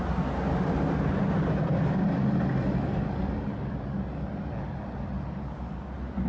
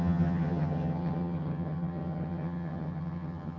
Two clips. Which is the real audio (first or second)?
first